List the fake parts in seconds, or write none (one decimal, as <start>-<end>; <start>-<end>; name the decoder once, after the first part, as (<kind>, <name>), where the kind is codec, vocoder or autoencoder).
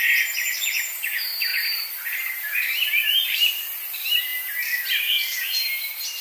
0.0-6.2 (vocoder, BigVGAN v2)